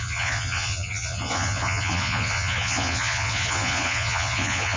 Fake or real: fake